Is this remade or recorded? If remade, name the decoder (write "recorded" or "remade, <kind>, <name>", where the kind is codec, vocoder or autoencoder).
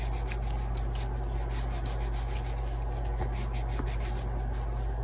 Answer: recorded